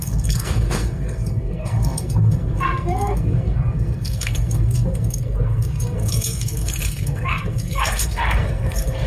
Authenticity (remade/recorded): remade